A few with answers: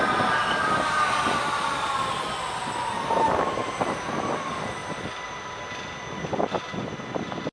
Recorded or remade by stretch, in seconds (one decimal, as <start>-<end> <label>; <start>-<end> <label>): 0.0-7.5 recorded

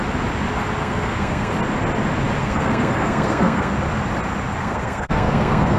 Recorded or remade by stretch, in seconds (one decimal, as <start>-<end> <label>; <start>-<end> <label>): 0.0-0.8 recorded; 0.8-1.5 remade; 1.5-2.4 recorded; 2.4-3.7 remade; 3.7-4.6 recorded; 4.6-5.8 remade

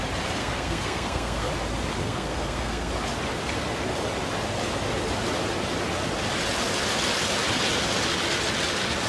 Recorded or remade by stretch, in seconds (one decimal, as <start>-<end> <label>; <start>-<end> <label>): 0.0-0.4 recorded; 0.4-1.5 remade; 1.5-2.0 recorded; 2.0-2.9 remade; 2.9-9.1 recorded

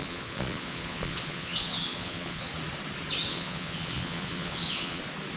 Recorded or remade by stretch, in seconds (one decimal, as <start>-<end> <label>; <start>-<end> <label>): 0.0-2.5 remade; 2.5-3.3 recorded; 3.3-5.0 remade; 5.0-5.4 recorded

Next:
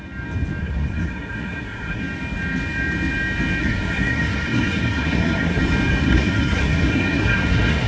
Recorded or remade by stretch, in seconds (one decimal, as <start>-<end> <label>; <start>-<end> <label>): 0.0-0.6 recorded; 0.6-2.0 remade; 2.0-3.6 recorded; 3.6-5.6 remade; 5.6-6.0 recorded; 6.0-7.9 remade

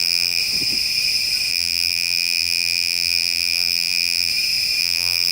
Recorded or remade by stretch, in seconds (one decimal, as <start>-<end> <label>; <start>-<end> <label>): 0.0-0.4 remade; 0.4-1.5 recorded; 1.5-4.3 remade; 4.3-4.8 recorded; 4.8-5.3 remade

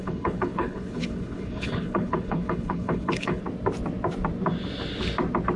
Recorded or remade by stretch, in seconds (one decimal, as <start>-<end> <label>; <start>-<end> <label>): 0.0-3.4 remade; 3.4-5.6 recorded

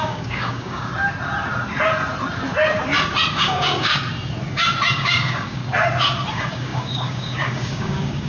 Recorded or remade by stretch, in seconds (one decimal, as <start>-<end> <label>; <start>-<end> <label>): 0.0-0.9 remade; 0.9-3.3 recorded; 3.3-3.9 remade; 3.9-4.9 recorded; 4.9-5.6 remade; 5.6-6.3 recorded; 6.3-8.3 remade